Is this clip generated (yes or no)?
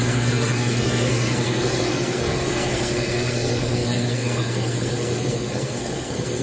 yes